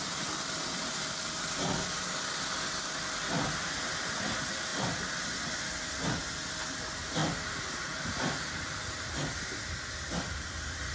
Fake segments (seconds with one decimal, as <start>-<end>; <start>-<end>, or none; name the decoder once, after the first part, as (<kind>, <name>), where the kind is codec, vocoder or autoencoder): none